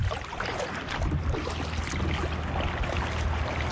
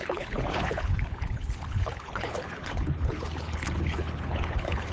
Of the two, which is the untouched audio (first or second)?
first